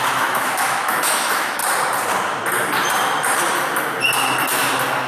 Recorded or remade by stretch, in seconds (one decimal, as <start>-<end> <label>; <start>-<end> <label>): 0.0-1.6 remade; 1.6-5.1 recorded